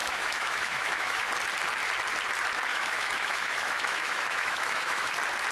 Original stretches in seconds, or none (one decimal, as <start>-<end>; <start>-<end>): 1.3-2.7; 5.1-5.5